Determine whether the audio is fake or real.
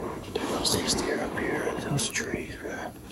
fake